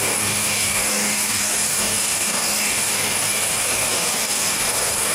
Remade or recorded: remade